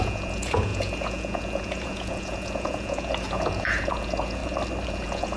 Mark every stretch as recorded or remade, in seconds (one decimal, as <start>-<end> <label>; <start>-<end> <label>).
0.0-4.4 remade; 4.4-4.9 recorded; 4.9-5.4 remade